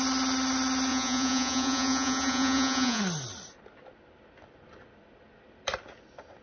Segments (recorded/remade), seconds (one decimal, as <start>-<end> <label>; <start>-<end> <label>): 0.0-0.9 recorded; 0.9-3.0 remade; 3.0-6.4 recorded